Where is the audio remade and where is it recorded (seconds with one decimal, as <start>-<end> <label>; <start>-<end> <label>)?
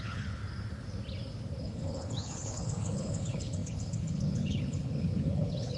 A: 0.0-0.4 remade; 0.4-1.6 recorded; 1.6-5.8 remade